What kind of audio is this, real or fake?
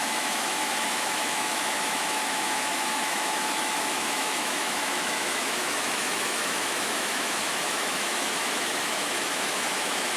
fake